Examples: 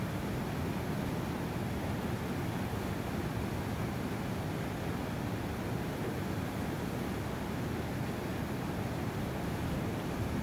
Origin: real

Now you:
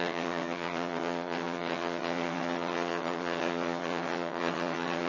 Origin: fake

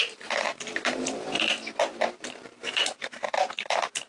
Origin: fake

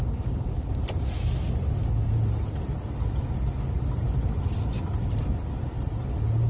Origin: real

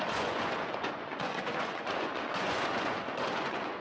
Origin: fake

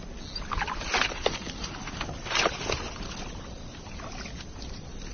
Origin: real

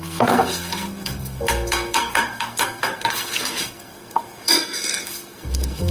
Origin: fake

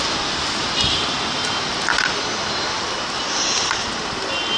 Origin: real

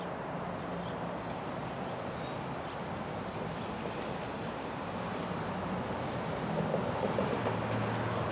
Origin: real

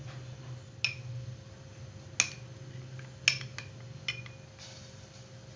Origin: real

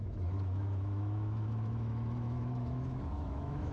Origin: fake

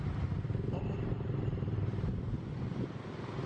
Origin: real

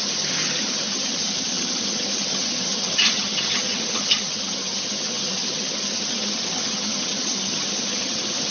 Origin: fake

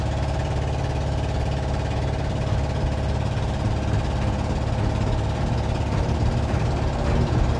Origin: real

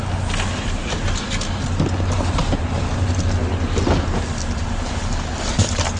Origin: real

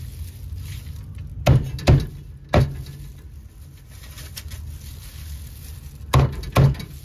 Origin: real